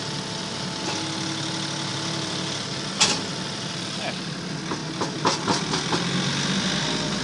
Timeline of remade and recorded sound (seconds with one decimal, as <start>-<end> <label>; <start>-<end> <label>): 0.0-1.9 recorded; 1.9-4.1 remade; 4.1-7.2 recorded